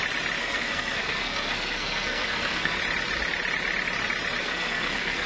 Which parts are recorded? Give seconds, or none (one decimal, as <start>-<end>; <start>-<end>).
0.0-0.4; 2.8-4.4